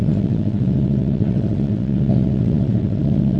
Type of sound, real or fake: fake